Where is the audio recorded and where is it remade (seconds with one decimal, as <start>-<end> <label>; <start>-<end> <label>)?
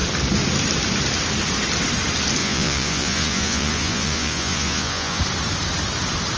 0.0-2.4 recorded; 2.4-5.2 remade; 5.2-6.4 recorded